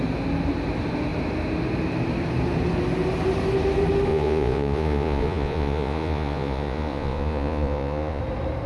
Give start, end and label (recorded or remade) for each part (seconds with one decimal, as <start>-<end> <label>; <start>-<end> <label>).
0.0-4.1 recorded; 4.1-8.2 remade; 8.2-8.7 recorded

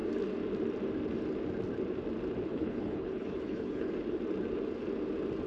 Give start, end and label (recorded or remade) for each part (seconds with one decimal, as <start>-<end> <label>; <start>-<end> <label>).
0.0-2.5 recorded; 2.5-3.9 remade; 3.9-5.5 recorded

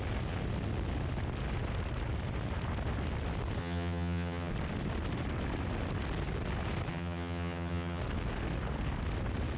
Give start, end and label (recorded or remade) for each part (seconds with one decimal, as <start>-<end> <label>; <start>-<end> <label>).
0.0-3.6 recorded; 3.6-4.5 remade; 4.5-6.9 recorded; 6.9-8.0 remade; 8.0-9.6 recorded

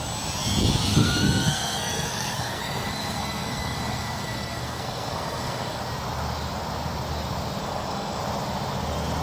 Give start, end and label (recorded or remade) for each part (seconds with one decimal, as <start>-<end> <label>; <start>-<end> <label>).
0.0-0.9 recorded; 0.9-5.8 remade; 5.8-7.6 recorded; 7.6-8.2 remade; 8.2-9.2 recorded

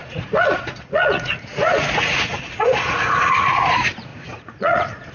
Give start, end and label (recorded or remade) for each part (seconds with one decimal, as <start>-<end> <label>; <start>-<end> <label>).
0.0-5.1 remade

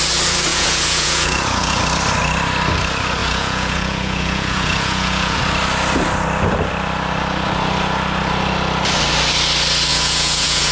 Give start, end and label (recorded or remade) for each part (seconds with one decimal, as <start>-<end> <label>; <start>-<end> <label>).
0.0-0.5 recorded; 0.5-1.8 remade; 1.8-3.2 recorded; 3.2-5.4 remade; 5.4-9.9 recorded; 9.9-10.7 remade

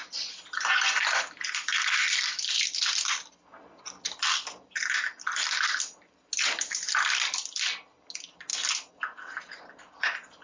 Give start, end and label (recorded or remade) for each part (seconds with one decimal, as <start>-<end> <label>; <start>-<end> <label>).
0.0-10.4 recorded

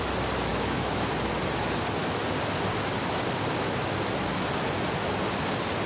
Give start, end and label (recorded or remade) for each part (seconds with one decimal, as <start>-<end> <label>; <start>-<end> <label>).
0.0-0.5 recorded; 0.5-1.1 remade; 1.1-5.9 recorded